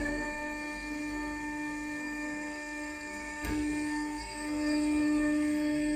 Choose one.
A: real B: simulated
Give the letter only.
B